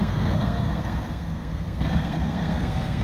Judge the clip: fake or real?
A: fake